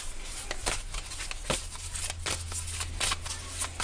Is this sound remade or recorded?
recorded